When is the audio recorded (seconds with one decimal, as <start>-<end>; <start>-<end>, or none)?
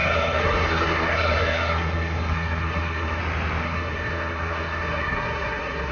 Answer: 3.2-3.6